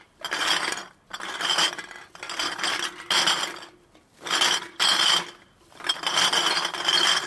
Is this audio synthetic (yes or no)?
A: no